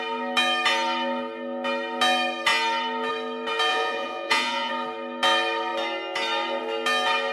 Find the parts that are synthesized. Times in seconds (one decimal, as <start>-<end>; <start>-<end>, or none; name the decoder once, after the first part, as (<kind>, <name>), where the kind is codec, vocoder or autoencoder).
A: 3.7-4.7 (vocoder, Vocos)